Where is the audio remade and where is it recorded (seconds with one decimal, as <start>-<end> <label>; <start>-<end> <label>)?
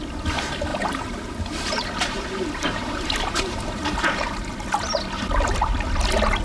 0.0-0.7 recorded; 0.7-4.5 remade; 4.5-6.4 recorded